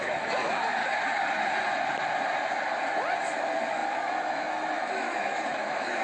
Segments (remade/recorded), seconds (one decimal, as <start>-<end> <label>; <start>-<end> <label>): 0.0-0.8 remade; 0.8-3.4 recorded; 3.4-6.0 remade